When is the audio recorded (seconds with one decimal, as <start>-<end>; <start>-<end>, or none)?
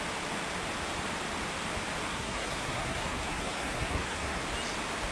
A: 0.0-2.1; 4.4-5.1